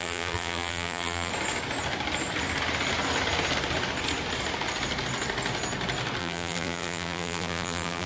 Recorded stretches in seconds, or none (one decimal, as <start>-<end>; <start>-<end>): 1.3-6.2